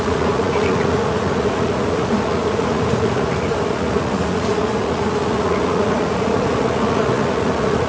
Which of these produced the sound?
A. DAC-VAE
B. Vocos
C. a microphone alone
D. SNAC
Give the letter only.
B